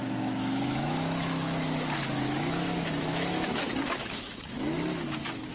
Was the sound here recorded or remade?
remade